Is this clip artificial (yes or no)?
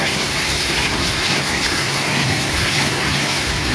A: yes